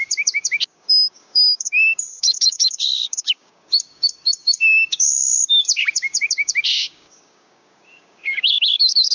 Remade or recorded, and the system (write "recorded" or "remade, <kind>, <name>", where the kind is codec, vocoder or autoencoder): remade, codec, DAC